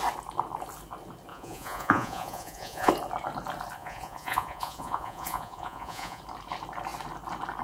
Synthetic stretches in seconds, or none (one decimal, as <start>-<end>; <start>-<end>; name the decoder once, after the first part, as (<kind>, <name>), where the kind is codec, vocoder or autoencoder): 1.3-2.9 (vocoder, Vocos); 3.8-6.2